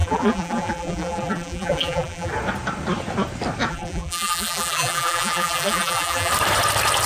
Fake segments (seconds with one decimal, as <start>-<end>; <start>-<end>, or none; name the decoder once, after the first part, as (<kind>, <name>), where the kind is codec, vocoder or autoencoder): 0.0-2.3 (vocoder, BigVGAN v2); 3.7-6.3

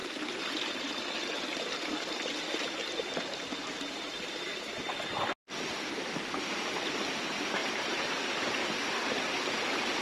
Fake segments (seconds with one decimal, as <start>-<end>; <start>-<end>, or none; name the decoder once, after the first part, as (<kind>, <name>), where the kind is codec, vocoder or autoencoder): 7.6-8.2 (vocoder, BigVGAN v2); 8.6-9.3

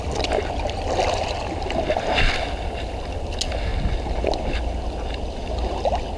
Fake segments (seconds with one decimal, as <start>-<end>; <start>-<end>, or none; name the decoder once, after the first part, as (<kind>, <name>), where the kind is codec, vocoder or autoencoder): none

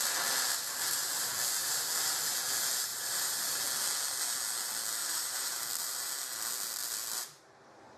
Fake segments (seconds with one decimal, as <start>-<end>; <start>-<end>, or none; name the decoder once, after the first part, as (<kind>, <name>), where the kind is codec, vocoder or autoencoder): 2.9-3.6 (vocoder, BigVGAN v2); 5.0-6.1

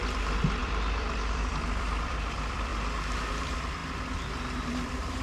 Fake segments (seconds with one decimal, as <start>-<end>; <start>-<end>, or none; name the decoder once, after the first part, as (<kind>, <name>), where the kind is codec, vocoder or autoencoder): 0.0-2.7 (vocoder, BigVGAN v2); 3.3-3.8; 4.7-5.2